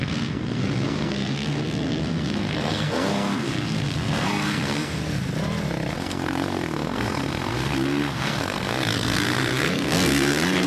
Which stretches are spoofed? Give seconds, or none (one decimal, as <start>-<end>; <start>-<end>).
0.0-5.0; 5.9-10.7